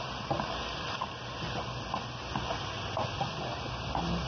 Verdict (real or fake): real